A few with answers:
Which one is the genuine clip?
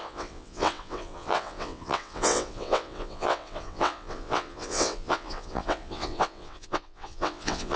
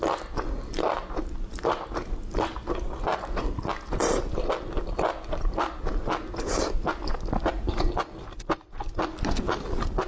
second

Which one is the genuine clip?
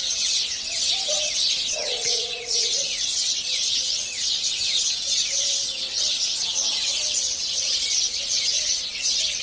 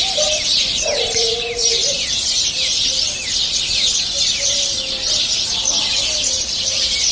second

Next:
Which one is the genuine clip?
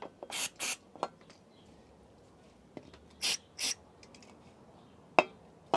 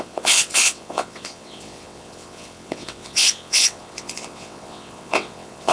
first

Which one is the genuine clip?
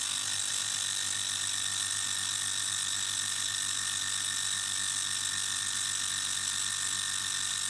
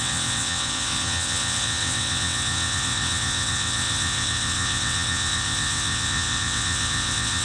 first